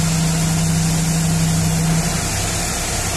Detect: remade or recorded recorded